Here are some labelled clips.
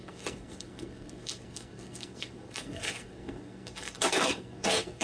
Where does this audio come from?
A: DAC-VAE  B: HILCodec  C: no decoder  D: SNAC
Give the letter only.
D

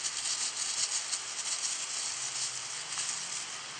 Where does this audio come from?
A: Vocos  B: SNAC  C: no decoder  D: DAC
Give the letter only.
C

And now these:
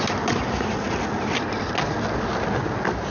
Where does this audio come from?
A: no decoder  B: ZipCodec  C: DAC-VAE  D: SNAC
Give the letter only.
A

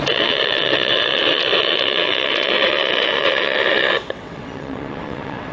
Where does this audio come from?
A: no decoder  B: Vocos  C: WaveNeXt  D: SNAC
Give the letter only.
C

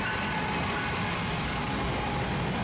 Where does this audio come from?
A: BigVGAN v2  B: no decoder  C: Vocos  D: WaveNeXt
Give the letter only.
B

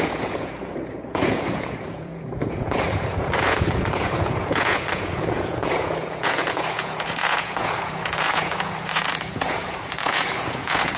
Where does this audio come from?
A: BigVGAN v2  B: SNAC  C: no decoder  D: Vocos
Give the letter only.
D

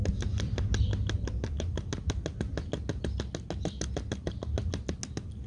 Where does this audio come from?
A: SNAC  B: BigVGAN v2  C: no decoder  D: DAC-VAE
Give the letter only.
C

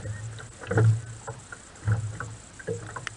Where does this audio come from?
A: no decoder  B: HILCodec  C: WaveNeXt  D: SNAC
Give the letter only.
A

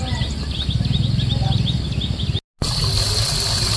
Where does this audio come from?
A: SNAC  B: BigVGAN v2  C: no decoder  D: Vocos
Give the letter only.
C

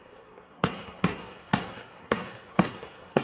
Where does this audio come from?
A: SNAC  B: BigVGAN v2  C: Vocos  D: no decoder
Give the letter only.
A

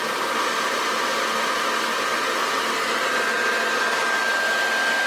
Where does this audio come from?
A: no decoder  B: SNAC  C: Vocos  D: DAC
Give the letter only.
A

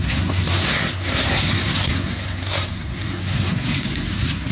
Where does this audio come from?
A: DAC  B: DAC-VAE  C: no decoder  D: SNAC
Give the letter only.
D